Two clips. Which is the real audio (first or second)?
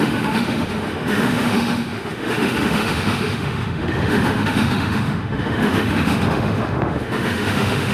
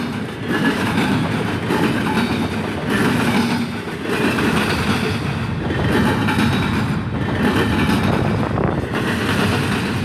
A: second